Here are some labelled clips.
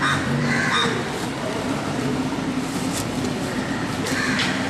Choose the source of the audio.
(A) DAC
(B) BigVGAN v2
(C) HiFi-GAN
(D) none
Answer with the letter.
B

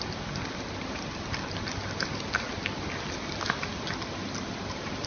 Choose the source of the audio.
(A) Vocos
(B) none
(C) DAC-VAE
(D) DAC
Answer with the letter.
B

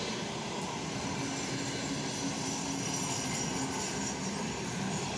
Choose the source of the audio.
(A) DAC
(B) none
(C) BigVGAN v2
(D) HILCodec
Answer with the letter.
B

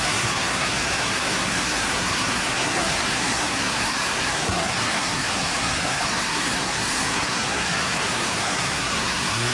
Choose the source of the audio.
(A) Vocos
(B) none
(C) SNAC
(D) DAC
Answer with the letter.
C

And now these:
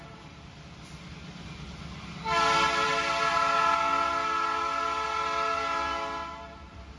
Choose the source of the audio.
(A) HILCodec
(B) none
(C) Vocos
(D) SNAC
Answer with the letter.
B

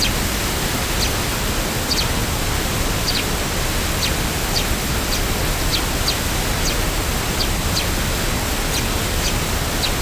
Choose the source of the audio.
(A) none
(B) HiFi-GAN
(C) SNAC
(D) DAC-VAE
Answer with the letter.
A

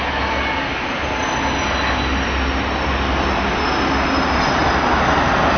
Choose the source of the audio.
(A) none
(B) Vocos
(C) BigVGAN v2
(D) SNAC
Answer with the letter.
A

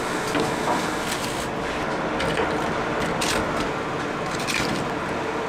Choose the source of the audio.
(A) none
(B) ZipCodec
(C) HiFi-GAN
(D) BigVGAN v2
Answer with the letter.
A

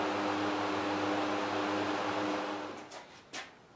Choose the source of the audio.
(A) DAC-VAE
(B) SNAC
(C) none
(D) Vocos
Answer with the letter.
C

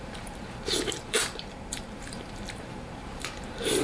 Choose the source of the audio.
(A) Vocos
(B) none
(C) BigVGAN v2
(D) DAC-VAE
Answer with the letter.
C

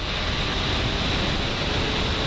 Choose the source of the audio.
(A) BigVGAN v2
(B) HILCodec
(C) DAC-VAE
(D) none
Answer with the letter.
D